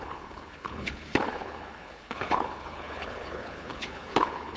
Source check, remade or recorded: remade